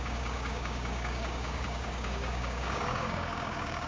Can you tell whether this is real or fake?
fake